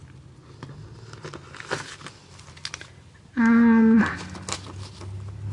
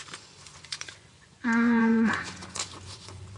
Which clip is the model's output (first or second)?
second